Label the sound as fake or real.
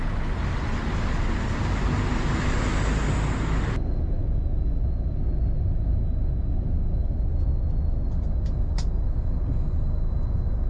real